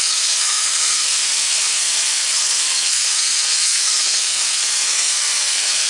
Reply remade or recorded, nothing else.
remade